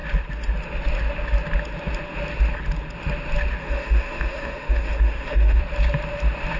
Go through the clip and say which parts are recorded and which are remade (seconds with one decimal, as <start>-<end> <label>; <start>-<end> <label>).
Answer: 0.0-3.6 recorded; 3.6-5.6 remade; 5.6-6.6 recorded